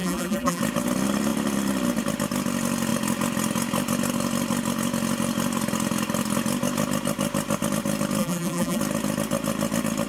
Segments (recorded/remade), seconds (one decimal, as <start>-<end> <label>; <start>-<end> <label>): 0.0-0.6 remade; 0.6-8.2 recorded; 8.2-8.8 remade; 8.8-10.1 recorded